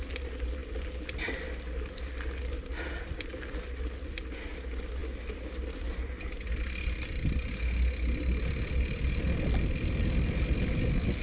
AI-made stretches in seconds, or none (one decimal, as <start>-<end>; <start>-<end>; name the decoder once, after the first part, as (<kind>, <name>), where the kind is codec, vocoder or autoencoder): none